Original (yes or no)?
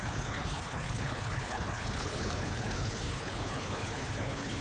no